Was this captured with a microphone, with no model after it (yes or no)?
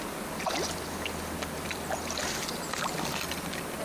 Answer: yes